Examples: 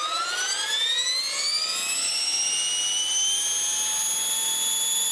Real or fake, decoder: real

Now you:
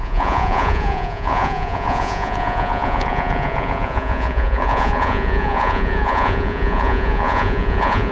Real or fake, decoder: fake, vocoder, Vocos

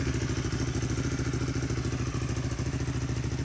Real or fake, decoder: real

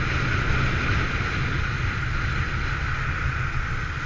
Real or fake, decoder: real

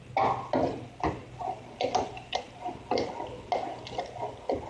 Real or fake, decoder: real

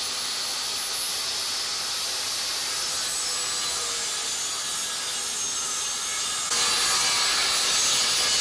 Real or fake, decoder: real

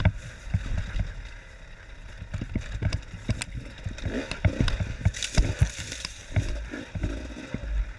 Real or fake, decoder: real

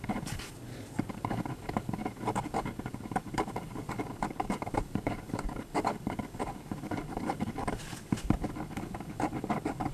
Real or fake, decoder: fake, codec, DAC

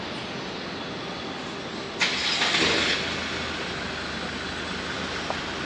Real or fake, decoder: real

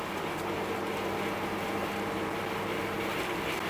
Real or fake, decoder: real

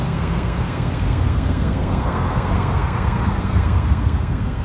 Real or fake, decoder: fake, codec, SNAC